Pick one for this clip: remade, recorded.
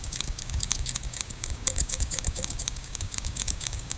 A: remade